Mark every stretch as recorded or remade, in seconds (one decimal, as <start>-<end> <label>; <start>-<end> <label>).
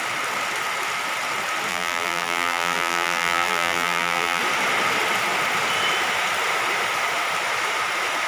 0.0-1.7 recorded; 1.7-4.4 remade; 4.4-8.3 recorded